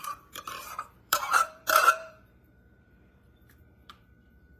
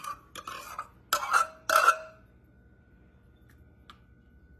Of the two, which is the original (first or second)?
second